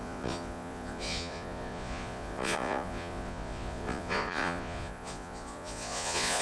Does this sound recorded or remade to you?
remade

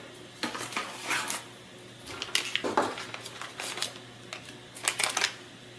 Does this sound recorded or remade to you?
recorded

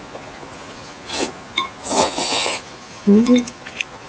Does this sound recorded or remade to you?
remade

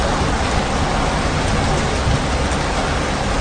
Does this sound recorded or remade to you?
recorded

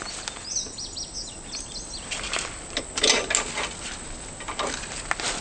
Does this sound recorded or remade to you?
recorded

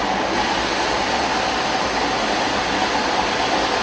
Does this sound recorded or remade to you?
recorded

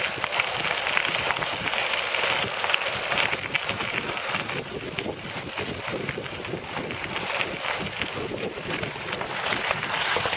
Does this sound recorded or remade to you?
recorded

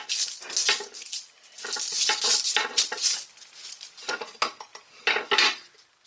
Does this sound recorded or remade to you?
recorded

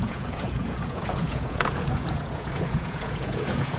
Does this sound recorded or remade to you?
remade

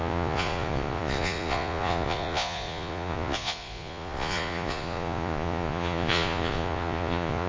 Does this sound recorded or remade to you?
remade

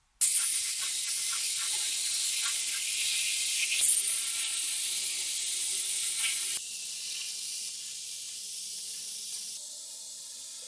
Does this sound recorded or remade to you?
recorded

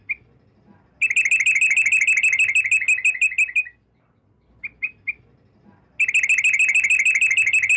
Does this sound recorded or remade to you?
recorded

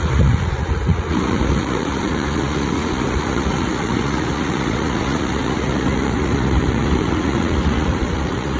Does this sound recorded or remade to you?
remade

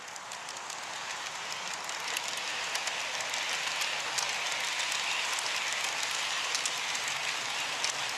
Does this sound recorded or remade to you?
recorded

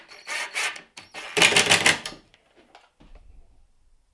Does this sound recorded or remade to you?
recorded